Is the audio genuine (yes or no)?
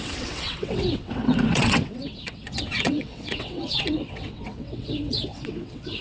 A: no